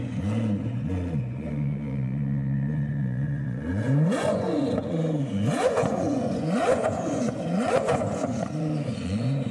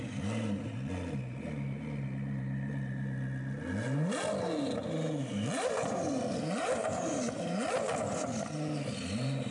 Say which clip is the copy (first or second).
first